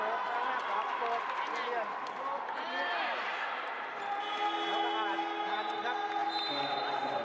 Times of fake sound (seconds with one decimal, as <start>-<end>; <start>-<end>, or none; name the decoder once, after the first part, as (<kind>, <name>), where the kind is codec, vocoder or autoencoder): 6.2-7.2 (vocoder, BigVGAN v2)